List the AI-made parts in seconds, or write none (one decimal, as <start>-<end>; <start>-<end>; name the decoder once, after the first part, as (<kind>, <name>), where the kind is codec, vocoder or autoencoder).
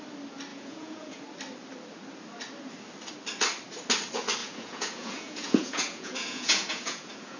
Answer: 0.5-1.2 (vocoder, Vocos); 4.4-7.4